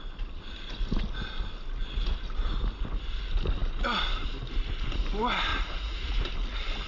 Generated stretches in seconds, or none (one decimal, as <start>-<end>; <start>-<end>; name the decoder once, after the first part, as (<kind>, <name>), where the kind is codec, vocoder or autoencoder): 5.5-6.1 (vocoder, Vocos)